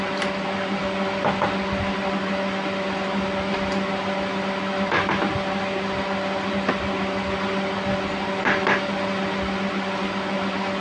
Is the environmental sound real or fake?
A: real